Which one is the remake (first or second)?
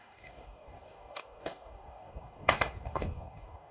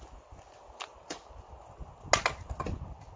first